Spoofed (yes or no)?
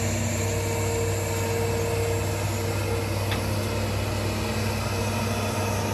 no